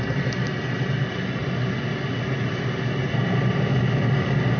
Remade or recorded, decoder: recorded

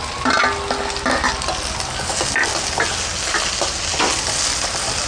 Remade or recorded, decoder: recorded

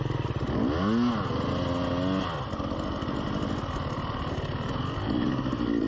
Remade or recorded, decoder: recorded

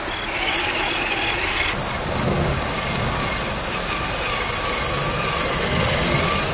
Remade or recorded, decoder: recorded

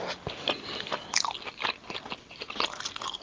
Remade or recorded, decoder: recorded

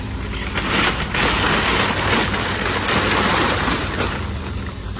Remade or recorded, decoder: recorded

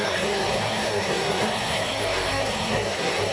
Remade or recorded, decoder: remade, codec, SNAC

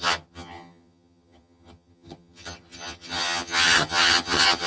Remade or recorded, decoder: remade, vocoder, HiFi-GAN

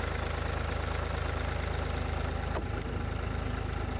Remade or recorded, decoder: recorded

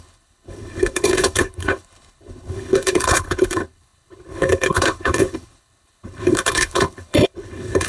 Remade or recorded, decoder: remade, codec, HILCodec